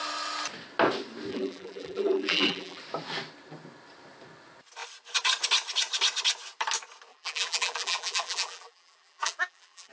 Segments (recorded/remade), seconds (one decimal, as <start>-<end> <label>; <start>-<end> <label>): 0.0-1.3 recorded; 1.3-2.8 remade; 2.8-7.1 recorded; 7.1-9.9 remade